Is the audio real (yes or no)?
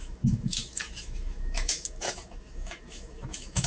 no